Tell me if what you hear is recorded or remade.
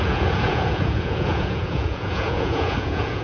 remade